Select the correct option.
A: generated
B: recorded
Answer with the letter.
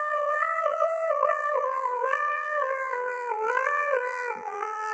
A